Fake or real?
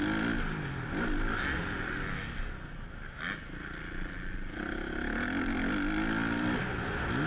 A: real